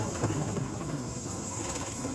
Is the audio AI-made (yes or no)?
yes